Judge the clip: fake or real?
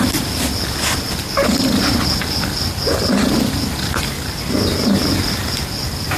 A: real